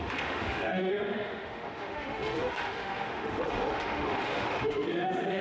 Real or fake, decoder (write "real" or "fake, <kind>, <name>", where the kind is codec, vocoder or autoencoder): fake, autoencoder, DAC-VAE